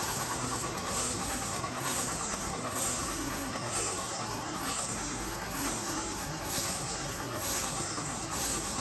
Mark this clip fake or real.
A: fake